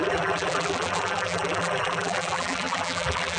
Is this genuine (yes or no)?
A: no